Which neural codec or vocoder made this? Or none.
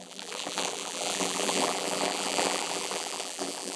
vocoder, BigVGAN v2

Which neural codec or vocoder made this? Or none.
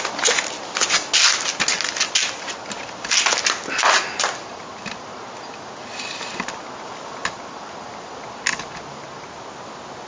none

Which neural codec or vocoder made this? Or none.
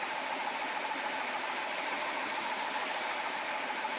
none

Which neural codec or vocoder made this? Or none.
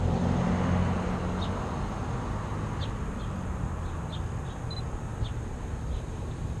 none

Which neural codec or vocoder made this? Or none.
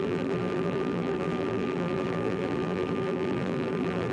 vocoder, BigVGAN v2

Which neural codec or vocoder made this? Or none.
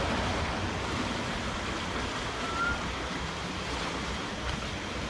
none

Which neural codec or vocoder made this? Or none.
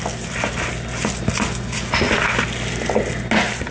none